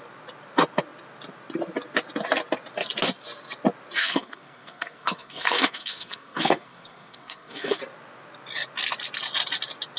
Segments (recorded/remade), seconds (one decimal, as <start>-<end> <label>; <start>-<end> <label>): 0.0-4.0 recorded; 4.0-7.8 remade; 7.8-10.0 recorded